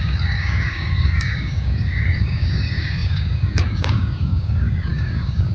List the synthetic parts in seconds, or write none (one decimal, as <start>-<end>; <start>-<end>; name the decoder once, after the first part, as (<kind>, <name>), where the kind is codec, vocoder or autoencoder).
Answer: 0.0-5.5 (codec, DAC)